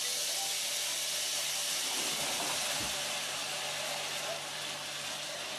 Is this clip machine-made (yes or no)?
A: no